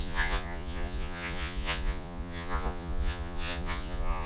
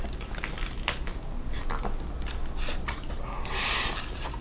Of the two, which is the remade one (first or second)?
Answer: first